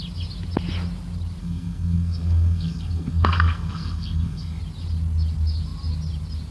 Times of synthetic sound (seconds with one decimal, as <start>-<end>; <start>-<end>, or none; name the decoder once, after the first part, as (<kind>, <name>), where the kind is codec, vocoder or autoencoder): 1.4-4.6 (codec, SNAC)